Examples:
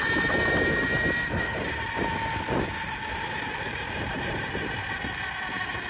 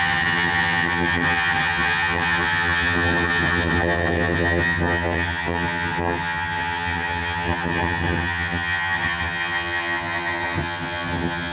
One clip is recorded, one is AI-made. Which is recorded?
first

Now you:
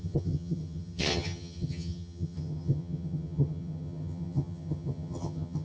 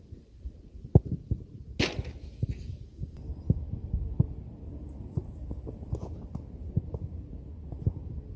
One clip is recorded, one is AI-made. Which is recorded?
second